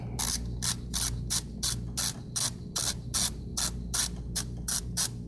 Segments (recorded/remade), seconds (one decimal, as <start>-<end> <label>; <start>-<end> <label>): 0.0-5.3 recorded